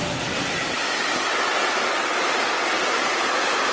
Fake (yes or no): no